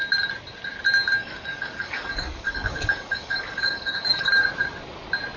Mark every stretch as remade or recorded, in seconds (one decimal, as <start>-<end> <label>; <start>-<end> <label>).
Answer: 0.0-1.2 recorded; 1.2-4.3 remade; 4.3-5.4 recorded